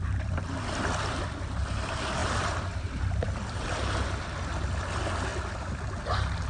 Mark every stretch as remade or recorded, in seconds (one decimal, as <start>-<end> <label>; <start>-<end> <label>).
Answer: 0.0-2.2 recorded; 2.2-3.1 remade; 3.1-5.3 recorded; 5.3-5.8 remade; 5.8-6.5 recorded